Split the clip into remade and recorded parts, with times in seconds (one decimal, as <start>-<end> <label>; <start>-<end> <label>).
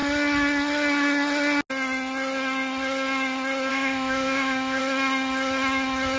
0.0-3.7 recorded; 3.7-4.8 remade; 4.8-6.2 recorded